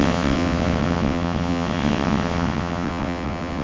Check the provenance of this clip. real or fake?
fake